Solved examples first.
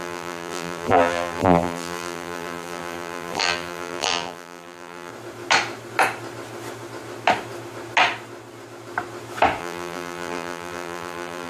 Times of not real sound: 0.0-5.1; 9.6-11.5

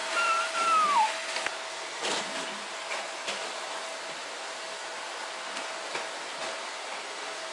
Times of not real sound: none

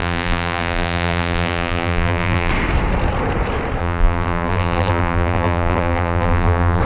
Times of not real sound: 0.0-2.5; 3.8-6.8